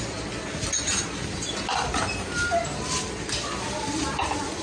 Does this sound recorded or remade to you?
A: recorded